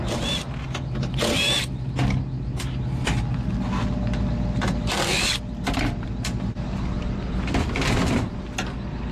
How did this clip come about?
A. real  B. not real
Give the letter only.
A